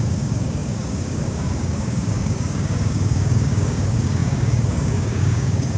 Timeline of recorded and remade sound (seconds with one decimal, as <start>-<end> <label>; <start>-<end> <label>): 0.0-5.8 remade